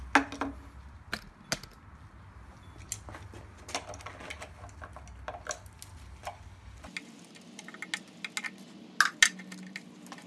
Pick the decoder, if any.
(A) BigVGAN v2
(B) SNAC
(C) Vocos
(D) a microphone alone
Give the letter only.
D